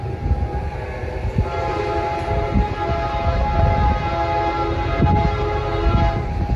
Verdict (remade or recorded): recorded